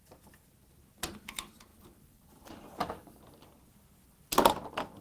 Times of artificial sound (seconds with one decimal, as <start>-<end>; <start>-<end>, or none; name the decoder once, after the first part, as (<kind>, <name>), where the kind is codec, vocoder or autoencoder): 1.7-3.6 (vocoder, BigVGAN v2)